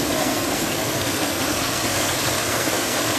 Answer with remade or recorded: remade